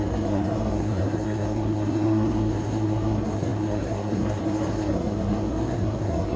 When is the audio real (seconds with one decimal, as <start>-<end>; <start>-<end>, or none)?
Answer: none